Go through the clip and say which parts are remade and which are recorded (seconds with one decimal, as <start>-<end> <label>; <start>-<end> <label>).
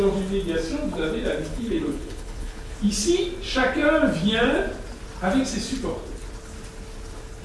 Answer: 0.0-1.5 recorded; 1.5-2.7 remade; 2.7-7.4 recorded